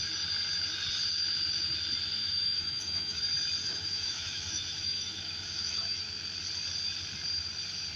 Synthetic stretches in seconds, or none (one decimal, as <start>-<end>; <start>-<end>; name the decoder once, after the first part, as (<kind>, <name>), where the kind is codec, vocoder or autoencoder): 2.2-3.2 (autoencoder, DAC-VAE); 3.6-6.1